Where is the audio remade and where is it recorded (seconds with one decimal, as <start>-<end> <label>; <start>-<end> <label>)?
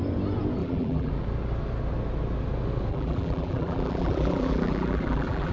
0.0-0.6 recorded; 0.6-1.1 remade; 1.1-2.9 recorded; 2.9-5.5 remade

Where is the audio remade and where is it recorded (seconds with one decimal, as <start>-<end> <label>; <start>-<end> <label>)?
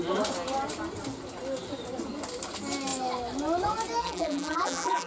0.0-4.0 recorded; 4.0-5.1 remade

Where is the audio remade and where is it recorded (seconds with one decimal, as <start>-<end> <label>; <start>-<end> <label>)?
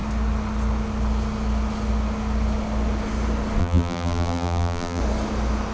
0.0-3.6 recorded; 3.6-5.0 remade; 5.0-5.7 recorded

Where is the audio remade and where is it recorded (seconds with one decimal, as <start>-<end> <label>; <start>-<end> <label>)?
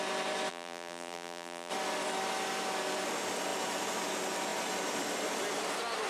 0.0-0.5 recorded; 0.5-1.7 remade; 1.7-6.1 recorded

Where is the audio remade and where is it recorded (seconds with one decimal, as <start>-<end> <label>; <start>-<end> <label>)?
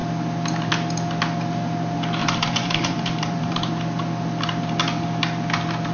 0.0-2.2 recorded; 2.2-3.7 remade; 3.7-5.9 recorded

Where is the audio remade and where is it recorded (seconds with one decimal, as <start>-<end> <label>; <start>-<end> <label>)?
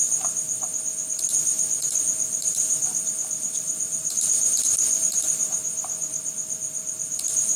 0.0-2.4 recorded; 2.4-6.3 remade; 6.3-7.6 recorded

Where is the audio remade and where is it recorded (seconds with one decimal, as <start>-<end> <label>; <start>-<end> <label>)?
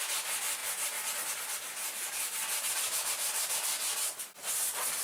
0.0-0.6 recorded; 0.6-3.5 remade; 3.5-5.0 recorded